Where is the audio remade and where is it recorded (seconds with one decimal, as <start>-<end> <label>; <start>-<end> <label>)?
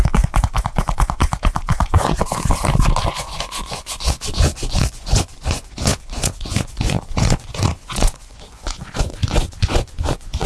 0.0-2.2 remade; 2.2-3.1 recorded; 3.1-10.5 remade